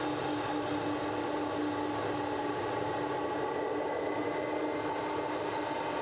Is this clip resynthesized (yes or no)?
no